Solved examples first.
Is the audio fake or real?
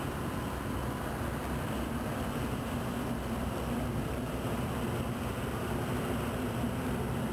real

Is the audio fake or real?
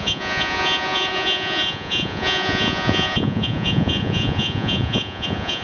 fake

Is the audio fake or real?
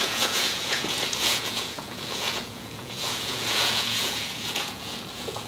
fake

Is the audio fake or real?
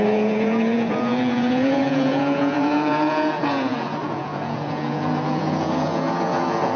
fake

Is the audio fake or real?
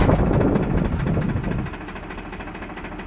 real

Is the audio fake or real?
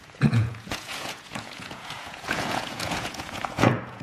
fake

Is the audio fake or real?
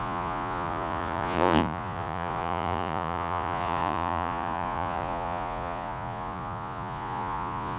fake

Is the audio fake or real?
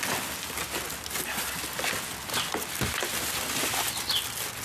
real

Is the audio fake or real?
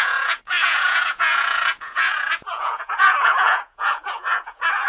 fake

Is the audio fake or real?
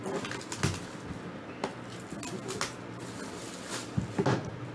real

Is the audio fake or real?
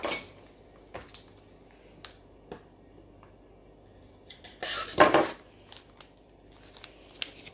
real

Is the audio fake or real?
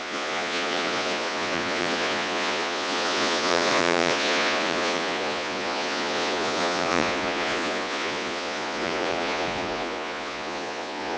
fake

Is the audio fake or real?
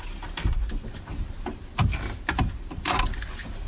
real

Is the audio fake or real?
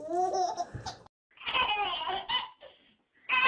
real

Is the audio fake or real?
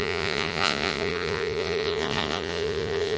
fake